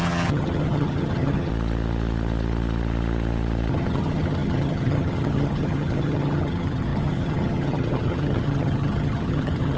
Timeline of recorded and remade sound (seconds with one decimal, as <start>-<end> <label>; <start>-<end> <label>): 0.0-1.5 remade; 1.5-3.7 recorded; 3.7-9.8 remade